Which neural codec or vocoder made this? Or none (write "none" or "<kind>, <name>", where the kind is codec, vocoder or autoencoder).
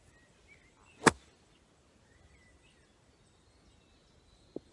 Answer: none